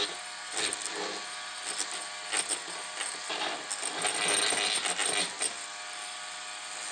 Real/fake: real